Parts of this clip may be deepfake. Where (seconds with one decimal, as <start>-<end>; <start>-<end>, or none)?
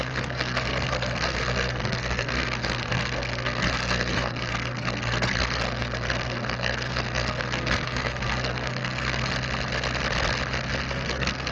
0.0-9.3; 10.9-11.5